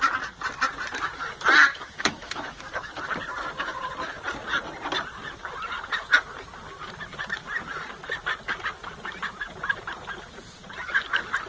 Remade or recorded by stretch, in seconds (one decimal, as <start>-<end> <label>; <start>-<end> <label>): 0.0-1.7 recorded; 1.7-3.0 remade; 3.0-11.5 recorded